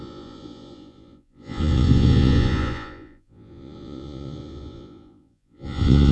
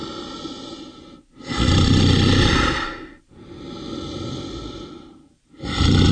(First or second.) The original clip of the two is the second